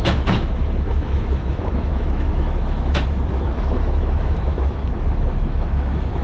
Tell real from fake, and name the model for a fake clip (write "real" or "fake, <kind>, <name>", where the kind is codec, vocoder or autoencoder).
fake, autoencoder, DAC-VAE